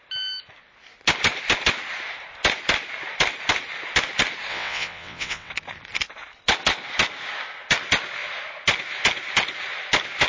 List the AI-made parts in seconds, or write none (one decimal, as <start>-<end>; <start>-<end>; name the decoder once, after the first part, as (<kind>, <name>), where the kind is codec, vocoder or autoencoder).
4.5-5.5 (vocoder, WaveNeXt)